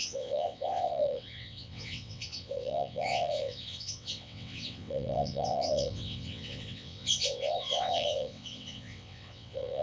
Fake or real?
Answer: fake